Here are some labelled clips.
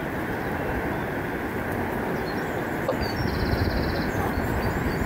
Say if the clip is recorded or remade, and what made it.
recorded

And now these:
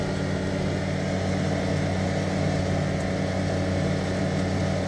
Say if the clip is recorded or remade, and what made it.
recorded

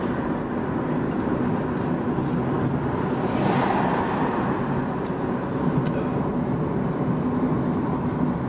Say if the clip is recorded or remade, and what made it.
recorded